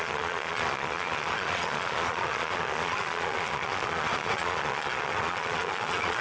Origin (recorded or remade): remade